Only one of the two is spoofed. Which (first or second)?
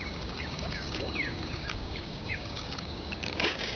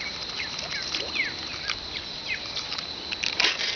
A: first